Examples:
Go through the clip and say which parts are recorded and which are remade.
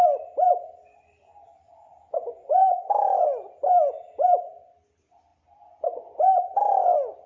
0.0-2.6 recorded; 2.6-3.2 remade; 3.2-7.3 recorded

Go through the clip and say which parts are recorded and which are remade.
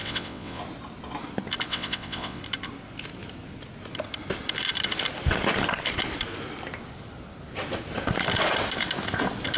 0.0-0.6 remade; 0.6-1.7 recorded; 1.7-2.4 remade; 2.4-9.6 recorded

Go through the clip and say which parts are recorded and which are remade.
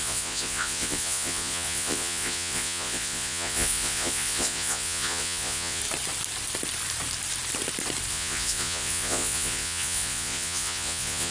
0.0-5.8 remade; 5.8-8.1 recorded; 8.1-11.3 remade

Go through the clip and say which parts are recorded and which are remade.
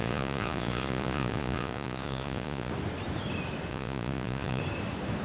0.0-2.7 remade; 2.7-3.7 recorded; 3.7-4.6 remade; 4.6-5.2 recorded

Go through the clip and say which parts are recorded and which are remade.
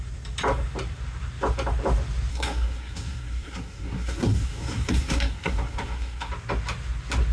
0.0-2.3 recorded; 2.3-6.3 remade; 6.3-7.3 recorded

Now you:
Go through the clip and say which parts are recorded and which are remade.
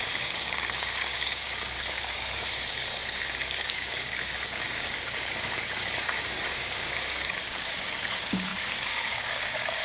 0.0-9.8 remade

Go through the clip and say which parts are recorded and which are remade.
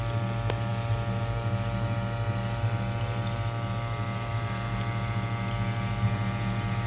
0.0-6.9 recorded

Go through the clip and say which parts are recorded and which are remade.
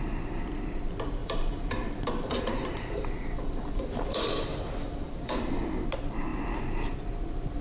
0.0-1.2 recorded; 1.2-5.6 remade; 5.6-7.6 recorded